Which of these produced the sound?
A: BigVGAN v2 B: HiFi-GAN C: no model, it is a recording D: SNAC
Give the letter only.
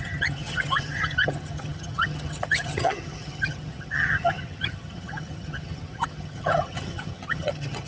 B